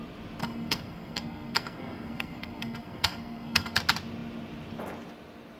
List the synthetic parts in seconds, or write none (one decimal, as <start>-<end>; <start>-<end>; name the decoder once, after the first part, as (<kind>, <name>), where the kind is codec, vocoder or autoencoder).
0.4-3.8 (codec, SNAC)